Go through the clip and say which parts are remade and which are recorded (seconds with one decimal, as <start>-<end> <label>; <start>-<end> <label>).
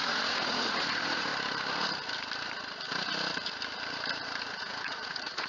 0.0-1.3 remade; 1.3-4.6 recorded; 4.6-5.5 remade